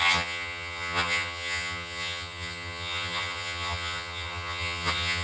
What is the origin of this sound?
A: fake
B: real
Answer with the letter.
A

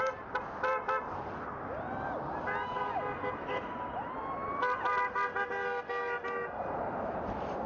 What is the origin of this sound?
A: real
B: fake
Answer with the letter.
A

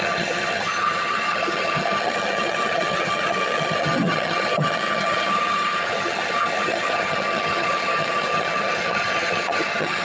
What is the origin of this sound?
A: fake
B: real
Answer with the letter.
A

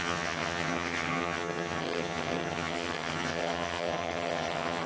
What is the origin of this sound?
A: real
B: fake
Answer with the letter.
B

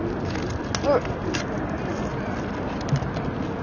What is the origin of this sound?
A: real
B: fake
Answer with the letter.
A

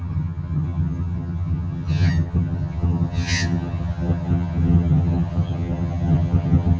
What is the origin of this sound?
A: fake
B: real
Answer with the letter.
A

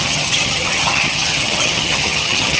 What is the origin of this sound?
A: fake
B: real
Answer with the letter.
A